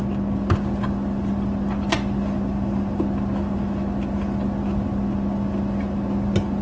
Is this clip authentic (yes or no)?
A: yes